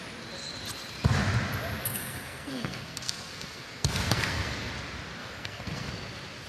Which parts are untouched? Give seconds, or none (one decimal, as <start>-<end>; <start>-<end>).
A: 0.0-1.8; 4.7-5.2; 5.9-6.5